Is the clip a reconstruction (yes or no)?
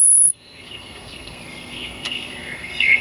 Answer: yes